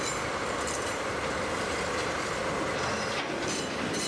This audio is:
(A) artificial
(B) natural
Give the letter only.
A